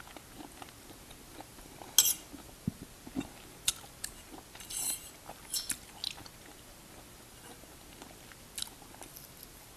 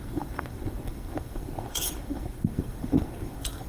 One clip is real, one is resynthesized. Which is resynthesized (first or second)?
second